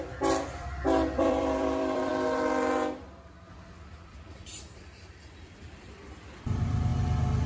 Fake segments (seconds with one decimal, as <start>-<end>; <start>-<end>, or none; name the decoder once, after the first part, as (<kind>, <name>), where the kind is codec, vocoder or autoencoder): 0.0-2.1 (vocoder, BigVGAN v2); 4.1-6.9